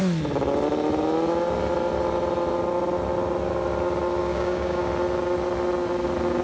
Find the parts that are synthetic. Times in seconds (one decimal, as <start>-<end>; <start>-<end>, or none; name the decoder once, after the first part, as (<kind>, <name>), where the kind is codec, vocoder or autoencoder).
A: 4.2-4.9 (codec, DAC)